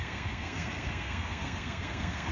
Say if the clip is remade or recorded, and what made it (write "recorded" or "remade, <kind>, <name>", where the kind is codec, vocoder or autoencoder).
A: remade, codec, SNAC